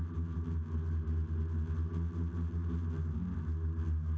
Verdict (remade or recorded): recorded